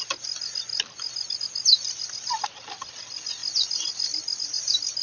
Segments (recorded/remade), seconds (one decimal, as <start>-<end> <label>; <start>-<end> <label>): 0.0-5.0 recorded